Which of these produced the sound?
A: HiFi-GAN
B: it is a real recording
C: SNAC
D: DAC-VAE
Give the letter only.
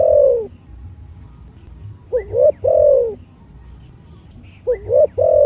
B